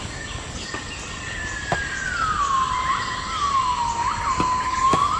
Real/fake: real